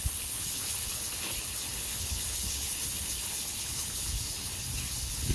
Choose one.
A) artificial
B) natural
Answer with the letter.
A